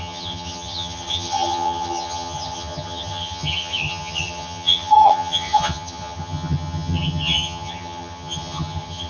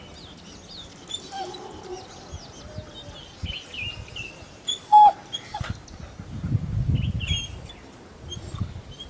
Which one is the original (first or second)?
second